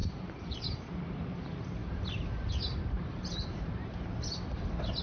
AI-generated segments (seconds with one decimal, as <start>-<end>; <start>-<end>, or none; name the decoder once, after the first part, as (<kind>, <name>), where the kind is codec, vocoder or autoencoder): 0.0-0.9 (vocoder, BigVGAN v2); 1.8-4.0